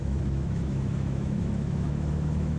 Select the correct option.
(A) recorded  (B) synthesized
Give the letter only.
B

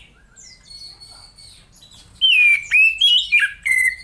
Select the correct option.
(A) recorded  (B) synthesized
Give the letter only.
A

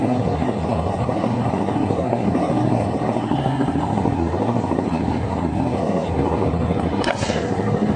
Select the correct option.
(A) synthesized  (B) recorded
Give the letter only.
A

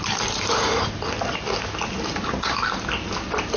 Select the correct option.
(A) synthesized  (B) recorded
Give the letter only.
B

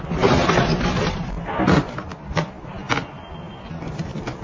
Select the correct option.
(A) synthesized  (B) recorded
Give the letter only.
B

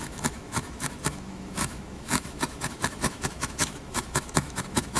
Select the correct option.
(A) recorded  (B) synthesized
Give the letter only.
B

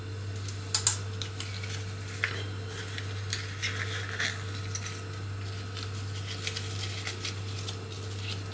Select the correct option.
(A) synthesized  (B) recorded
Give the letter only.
B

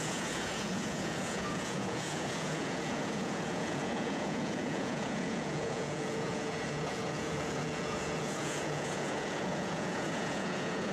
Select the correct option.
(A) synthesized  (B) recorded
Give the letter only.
A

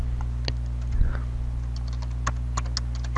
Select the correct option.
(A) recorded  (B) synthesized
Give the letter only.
A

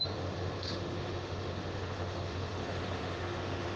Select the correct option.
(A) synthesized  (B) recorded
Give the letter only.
A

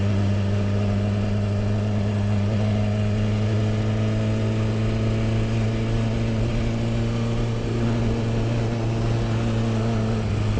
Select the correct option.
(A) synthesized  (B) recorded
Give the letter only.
B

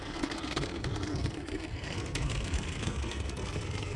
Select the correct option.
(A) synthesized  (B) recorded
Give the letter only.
A